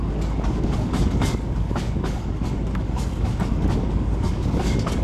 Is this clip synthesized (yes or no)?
yes